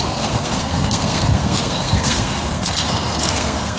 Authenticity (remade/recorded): remade